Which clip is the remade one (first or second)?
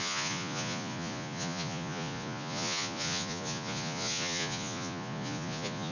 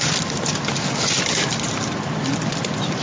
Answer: first